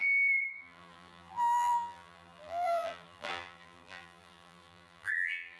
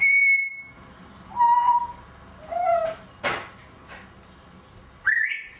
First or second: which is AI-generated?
first